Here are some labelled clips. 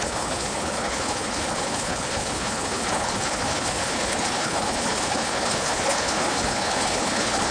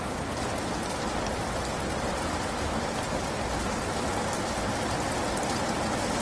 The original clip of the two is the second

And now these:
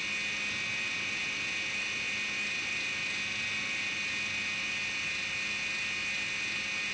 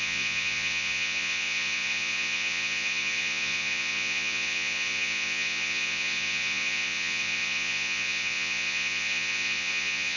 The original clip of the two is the first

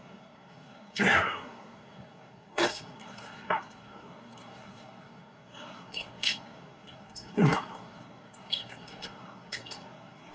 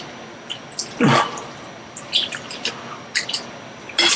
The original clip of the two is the second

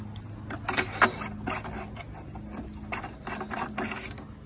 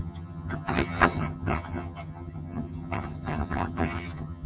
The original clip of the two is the first